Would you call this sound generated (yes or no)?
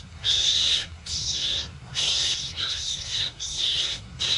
yes